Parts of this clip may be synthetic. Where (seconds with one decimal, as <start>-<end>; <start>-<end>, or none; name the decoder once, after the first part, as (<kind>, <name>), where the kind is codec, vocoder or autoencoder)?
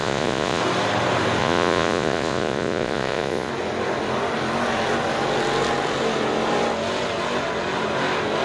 0.0-0.6 (vocoder, Vocos); 1.4-3.5